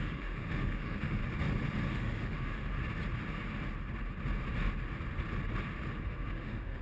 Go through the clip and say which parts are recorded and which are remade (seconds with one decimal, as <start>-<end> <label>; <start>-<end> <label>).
0.0-1.2 remade; 1.2-1.9 recorded; 1.9-2.8 remade; 2.8-6.0 recorded; 6.0-6.8 remade